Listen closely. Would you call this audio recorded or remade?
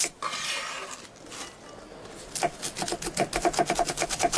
recorded